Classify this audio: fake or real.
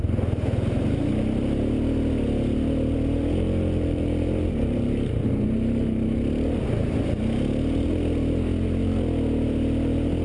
real